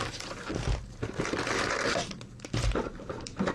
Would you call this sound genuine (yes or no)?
no